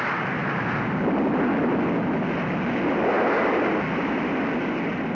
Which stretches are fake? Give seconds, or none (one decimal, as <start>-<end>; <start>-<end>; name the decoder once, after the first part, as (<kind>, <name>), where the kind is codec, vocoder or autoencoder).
0.4-1.0 (vocoder, BigVGAN v2); 3.9-4.4